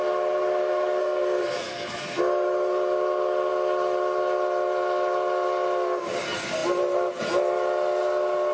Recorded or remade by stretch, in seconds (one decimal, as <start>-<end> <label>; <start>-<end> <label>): 0.0-1.0 recorded; 1.0-2.2 remade; 2.2-8.5 recorded